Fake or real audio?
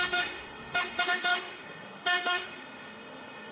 fake